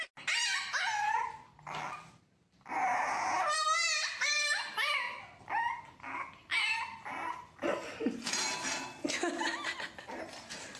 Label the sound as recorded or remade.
recorded